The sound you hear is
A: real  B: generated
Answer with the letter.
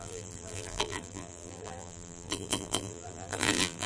B